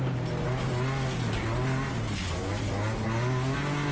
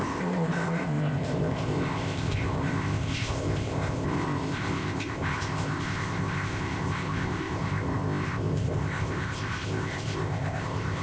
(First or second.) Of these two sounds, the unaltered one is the first